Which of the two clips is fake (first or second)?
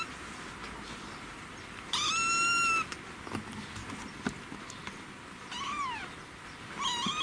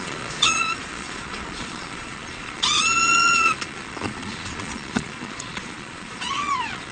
second